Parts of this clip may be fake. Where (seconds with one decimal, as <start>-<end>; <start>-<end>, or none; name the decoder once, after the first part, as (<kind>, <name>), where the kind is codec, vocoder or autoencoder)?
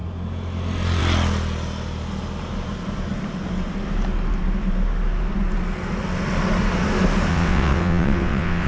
7.3-8.7 (vocoder, WaveNeXt)